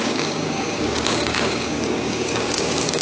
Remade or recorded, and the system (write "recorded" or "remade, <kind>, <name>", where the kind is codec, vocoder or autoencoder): remade, codec, DAC